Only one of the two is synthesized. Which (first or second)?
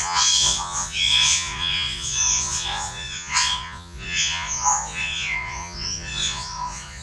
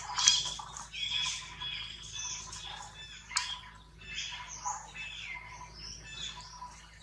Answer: first